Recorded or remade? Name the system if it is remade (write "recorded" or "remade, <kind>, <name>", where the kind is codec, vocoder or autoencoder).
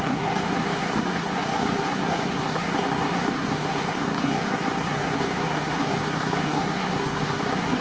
remade, codec, SNAC